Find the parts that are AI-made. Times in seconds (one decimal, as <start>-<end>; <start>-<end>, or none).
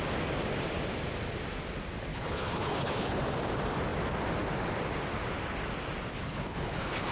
2.1-3.2; 6.1-7.1